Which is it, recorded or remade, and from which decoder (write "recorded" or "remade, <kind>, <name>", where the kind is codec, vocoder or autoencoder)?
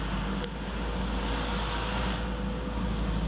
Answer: recorded